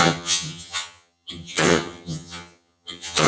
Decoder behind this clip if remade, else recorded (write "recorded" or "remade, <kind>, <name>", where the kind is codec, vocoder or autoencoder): remade, vocoder, HiFi-GAN